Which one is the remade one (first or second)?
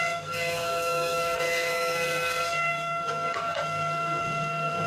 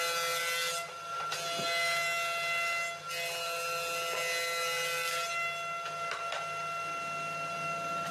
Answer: first